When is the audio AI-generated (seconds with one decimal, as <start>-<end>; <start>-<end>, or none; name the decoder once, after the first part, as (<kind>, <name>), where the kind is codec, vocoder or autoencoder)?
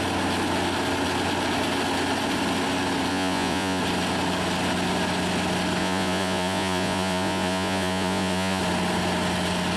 3.1-3.8 (vocoder, Vocos); 5.8-8.6